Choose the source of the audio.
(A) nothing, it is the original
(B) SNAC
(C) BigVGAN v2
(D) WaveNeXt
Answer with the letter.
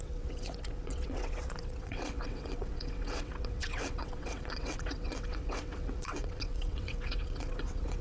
D